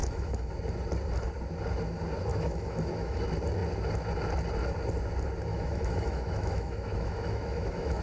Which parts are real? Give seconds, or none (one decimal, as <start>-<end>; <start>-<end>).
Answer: 0.5-2.3; 3.2-5.5